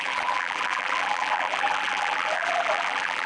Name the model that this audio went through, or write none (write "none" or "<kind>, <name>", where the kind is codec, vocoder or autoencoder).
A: vocoder, BigVGAN v2